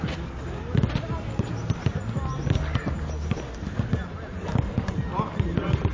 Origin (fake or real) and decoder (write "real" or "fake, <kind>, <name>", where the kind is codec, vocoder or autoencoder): real